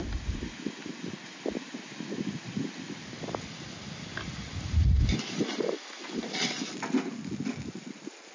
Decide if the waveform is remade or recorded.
recorded